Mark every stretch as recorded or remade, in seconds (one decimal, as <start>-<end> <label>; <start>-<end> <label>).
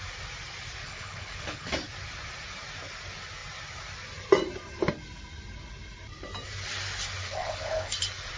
0.0-0.8 recorded; 0.8-1.7 remade; 1.7-7.2 recorded; 7.2-7.9 remade; 7.9-8.4 recorded